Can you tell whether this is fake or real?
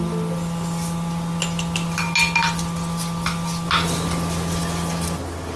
real